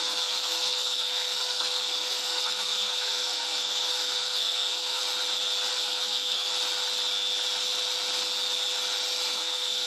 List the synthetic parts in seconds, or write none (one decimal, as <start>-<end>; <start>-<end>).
0.0-5.0; 5.7-6.5; 9.3-9.9